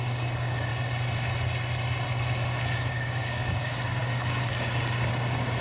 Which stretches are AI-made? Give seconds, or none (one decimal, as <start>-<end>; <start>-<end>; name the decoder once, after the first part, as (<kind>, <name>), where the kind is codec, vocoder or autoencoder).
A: 0.0-0.7 (codec, DAC); 2.9-5.6